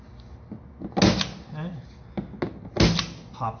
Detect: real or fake real